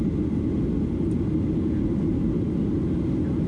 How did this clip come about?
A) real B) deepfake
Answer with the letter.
A